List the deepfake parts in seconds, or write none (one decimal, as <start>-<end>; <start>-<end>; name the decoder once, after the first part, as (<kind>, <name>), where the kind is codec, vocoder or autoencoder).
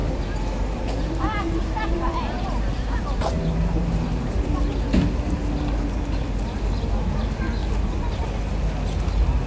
0.0-4.6 (vocoder, BigVGAN v2); 7.6-8.3